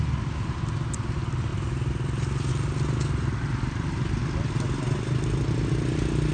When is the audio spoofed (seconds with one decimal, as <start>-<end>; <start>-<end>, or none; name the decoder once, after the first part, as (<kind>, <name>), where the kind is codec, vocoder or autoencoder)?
none

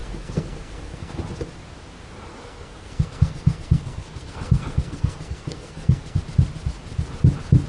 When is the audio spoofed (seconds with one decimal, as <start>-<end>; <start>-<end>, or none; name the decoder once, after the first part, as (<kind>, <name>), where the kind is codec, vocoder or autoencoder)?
0.0-1.2 (codec, SNAC); 2.3-6.2

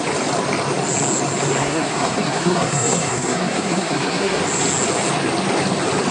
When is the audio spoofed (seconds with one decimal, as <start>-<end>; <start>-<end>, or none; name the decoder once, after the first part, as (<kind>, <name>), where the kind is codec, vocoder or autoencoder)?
1.6-4.4 (codec, SNAC)

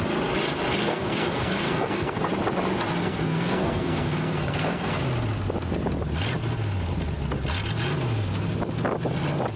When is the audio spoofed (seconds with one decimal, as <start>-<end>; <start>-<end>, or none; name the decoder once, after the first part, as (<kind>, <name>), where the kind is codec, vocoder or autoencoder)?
0.9-2.3 (codec, SNAC); 3.0-5.0

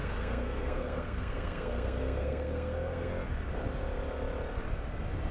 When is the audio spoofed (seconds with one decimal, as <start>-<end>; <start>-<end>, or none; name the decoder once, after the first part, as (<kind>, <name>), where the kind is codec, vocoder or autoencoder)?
0.0-3.1 (codec, SNAC)

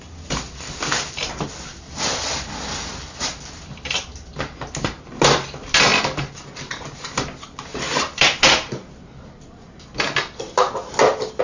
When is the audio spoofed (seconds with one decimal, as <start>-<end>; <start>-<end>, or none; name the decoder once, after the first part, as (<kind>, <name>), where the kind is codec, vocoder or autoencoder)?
none